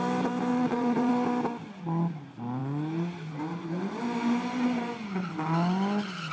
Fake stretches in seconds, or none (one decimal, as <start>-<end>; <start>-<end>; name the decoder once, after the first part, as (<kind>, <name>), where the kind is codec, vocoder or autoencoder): 0.5-1.1 (vocoder, Vocos)